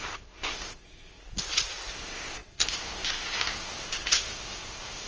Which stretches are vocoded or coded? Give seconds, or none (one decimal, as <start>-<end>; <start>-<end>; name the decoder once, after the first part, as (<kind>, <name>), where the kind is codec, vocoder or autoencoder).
0.0-1.2 (codec, SNAC); 1.9-5.1